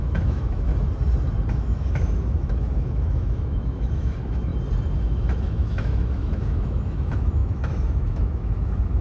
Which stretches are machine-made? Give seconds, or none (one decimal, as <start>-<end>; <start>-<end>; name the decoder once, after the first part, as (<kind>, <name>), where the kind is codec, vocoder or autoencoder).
0.0-0.7 (autoencoder, DAC-VAE); 1.5-4.5; 5.0-9.0